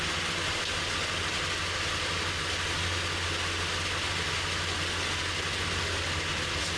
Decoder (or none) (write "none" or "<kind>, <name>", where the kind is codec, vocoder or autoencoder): none